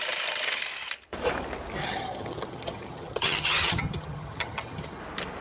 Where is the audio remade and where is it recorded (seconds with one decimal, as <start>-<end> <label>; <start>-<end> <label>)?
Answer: 0.0-1.8 recorded; 1.8-5.0 remade; 5.0-5.4 recorded